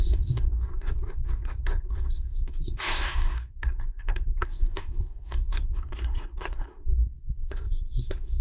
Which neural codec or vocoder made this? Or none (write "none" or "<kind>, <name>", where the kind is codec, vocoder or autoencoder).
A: codec, SNAC